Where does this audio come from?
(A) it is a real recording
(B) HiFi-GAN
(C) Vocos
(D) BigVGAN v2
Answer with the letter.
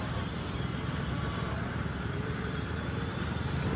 D